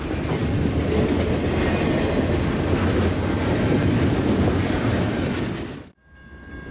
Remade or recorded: recorded